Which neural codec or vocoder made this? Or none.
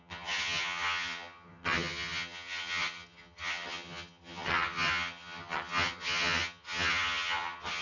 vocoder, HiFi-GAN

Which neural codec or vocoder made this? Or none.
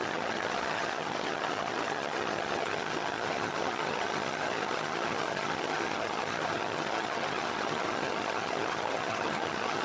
vocoder, HiFi-GAN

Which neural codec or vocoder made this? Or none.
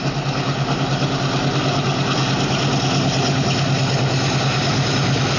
none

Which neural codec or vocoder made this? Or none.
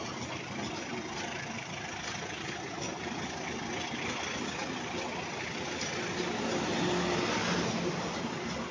none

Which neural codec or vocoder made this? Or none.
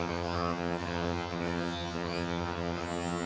vocoder, HiFi-GAN